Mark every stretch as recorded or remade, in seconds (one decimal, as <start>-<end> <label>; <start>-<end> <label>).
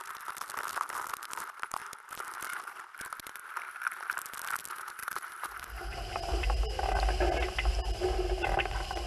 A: 0.0-5.0 recorded; 5.0-6.6 remade; 6.6-9.1 recorded